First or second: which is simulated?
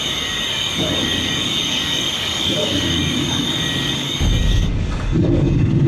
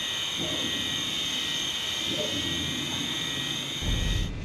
first